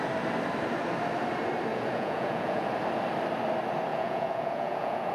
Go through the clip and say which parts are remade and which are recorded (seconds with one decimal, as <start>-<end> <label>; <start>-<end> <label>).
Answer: 0.0-1.7 recorded; 1.7-2.7 remade; 2.7-3.9 recorded; 3.9-5.1 remade